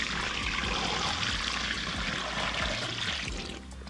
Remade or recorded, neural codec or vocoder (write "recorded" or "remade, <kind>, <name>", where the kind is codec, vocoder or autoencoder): recorded